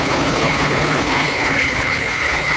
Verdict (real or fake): fake